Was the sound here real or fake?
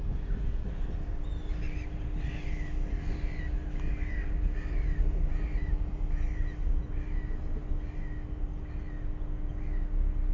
real